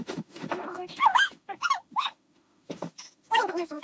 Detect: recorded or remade remade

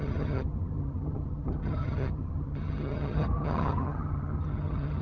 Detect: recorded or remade remade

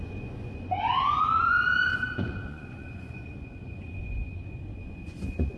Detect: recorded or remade remade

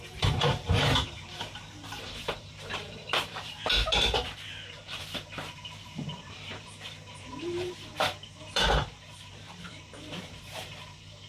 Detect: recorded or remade remade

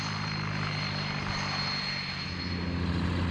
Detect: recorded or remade recorded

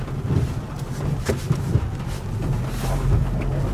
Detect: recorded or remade recorded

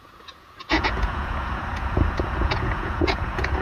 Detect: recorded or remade remade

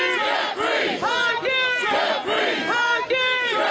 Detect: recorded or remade recorded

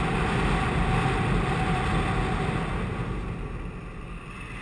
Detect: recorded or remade recorded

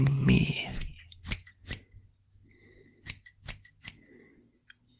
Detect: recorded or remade recorded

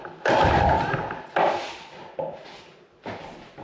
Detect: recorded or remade recorded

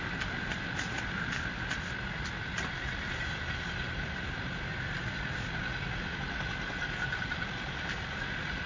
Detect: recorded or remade recorded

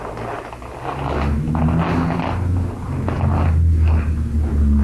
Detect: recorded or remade recorded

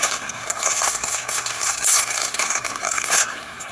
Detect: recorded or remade remade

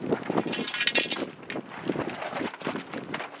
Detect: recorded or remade recorded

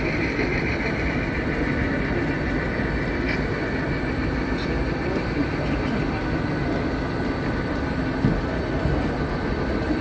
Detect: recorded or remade recorded